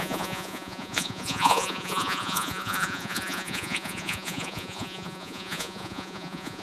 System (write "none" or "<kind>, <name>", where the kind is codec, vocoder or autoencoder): vocoder, Vocos